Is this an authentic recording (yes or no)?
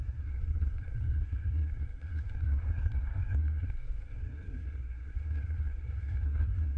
no